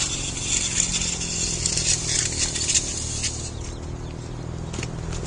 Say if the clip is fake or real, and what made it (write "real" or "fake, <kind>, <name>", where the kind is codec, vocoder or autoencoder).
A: real